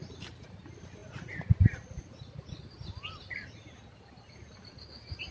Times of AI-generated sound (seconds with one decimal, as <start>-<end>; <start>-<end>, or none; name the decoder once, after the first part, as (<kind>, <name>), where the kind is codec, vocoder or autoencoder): none